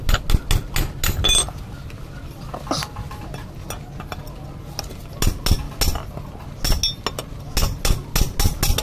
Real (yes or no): yes